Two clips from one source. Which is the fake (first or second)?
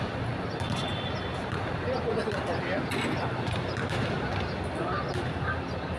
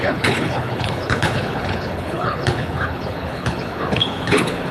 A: second